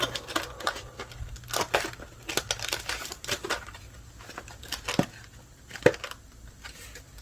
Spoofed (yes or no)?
no